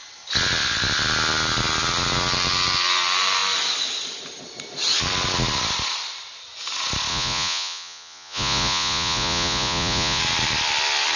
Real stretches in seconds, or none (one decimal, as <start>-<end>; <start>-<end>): 0.0-7.1; 10.2-11.2